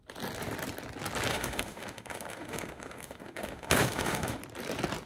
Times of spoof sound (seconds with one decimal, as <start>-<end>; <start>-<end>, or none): 1.3-4.4